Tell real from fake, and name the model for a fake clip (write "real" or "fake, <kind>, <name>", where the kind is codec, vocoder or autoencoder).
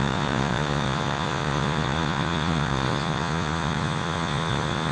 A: fake, vocoder, Vocos